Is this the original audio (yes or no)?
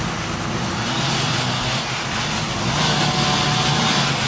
yes